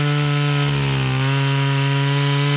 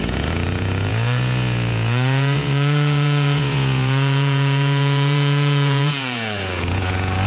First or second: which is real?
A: first